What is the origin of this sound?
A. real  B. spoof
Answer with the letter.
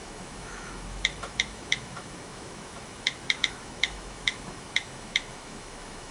B